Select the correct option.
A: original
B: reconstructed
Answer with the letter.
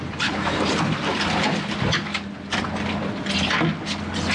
A